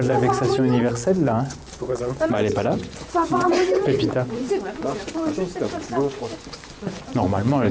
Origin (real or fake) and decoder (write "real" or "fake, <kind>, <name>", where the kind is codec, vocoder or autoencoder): fake, vocoder, Vocos